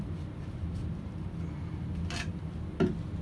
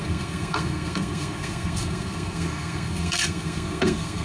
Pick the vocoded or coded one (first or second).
second